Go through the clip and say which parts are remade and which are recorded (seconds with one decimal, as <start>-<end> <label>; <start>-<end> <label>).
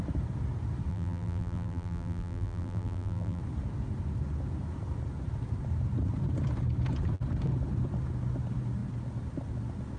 0.0-0.9 recorded; 0.9-3.4 remade; 3.4-10.0 recorded